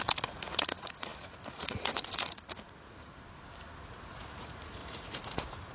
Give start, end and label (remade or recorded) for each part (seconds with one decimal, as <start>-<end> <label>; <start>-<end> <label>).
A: 0.0-3.1 remade; 3.1-3.8 recorded; 3.8-5.7 remade